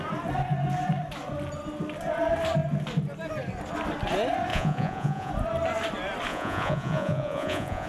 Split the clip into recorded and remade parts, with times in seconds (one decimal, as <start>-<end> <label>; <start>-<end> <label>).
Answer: 0.0-4.5 recorded; 4.5-5.3 remade; 5.3-6.3 recorded; 6.3-7.9 remade